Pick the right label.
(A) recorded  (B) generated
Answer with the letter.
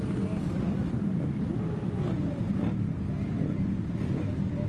A